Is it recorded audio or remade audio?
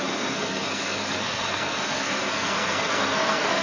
remade